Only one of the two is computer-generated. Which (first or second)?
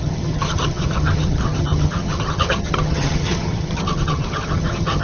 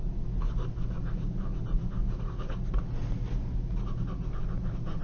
first